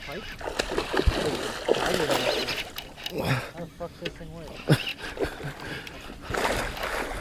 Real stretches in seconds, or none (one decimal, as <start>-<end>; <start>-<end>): 0.0-7.2